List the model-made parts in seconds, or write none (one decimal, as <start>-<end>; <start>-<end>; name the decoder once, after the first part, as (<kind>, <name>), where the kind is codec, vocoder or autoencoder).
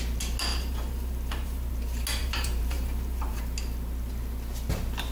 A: 0.5-1.7 (vocoder, BigVGAN v2); 2.2-3.4